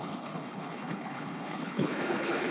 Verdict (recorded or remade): remade